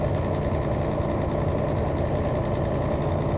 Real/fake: real